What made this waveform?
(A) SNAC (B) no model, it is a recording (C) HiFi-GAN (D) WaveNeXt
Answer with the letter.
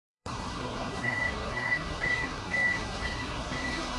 A